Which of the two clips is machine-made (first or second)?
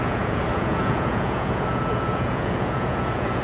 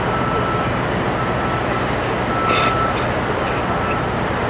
first